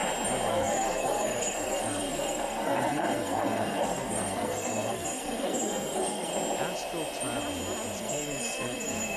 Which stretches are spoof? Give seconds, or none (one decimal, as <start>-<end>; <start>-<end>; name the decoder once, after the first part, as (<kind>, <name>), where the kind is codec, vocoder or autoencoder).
0.5-6.3 (codec, SNAC); 8.0-9.2